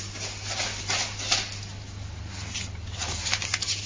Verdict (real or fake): real